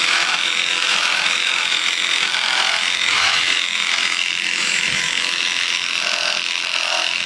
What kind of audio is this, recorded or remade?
remade